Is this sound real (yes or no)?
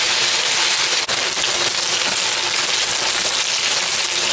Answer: yes